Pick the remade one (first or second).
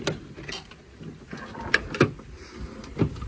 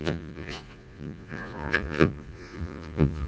second